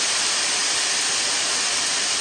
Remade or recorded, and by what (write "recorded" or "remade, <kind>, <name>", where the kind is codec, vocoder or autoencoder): recorded